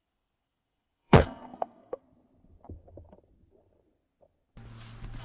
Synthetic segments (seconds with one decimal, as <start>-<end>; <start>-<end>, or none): 0.0-2.0